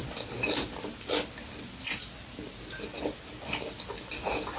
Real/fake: real